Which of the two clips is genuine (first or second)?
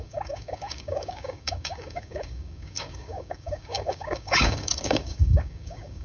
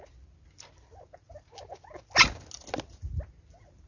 second